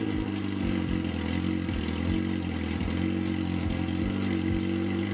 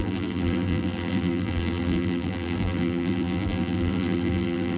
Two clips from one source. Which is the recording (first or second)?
first